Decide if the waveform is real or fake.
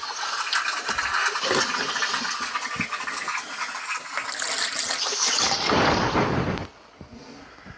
real